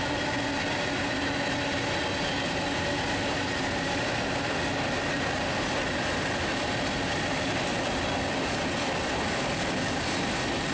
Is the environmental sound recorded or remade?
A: recorded